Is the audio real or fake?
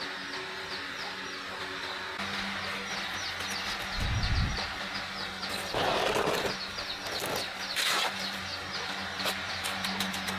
real